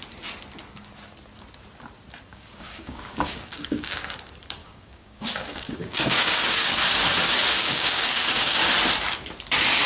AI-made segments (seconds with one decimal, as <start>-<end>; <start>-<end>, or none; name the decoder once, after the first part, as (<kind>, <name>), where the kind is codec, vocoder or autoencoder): 2.3-4.0 (codec, DAC); 4.6-6.8; 7.6-8.6